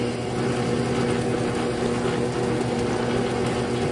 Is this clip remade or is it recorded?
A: recorded